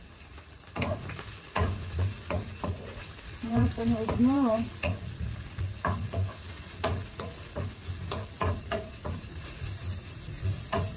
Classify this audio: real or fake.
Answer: fake